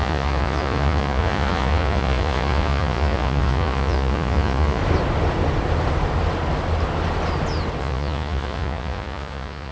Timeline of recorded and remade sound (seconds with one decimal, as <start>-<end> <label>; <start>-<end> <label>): 0.0-4.8 remade; 4.8-7.8 recorded; 7.8-9.7 remade

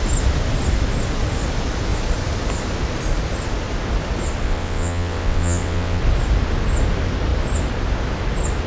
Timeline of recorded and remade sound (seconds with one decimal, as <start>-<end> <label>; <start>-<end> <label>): 0.0-4.4 recorded; 4.4-6.0 remade; 6.0-8.7 recorded

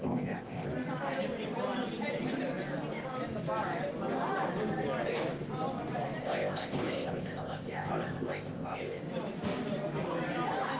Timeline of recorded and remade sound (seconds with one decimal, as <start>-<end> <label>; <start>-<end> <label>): 0.0-0.7 remade; 0.7-6.2 recorded; 6.2-9.0 remade; 9.0-10.8 recorded